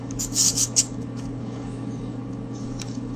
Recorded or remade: remade